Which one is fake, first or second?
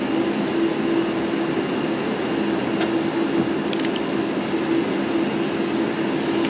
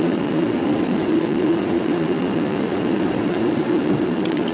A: second